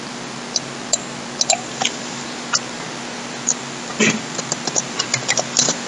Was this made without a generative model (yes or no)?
yes